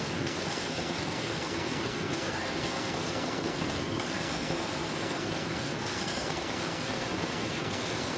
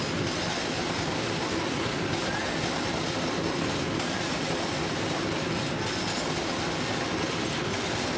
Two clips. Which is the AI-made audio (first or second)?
first